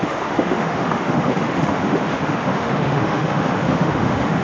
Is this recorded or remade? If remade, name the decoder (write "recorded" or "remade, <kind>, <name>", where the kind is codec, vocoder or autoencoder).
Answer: remade, autoencoder, DAC-VAE